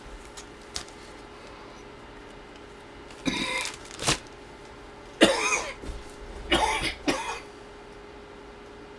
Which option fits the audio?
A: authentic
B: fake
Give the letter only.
A